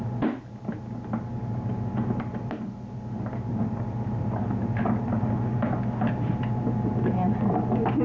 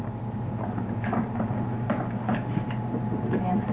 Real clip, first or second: first